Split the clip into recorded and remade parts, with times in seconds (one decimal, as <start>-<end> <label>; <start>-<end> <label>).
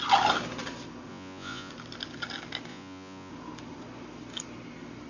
0.0-1.1 recorded; 1.1-1.7 remade; 1.7-2.7 recorded; 2.7-3.3 remade; 3.3-5.1 recorded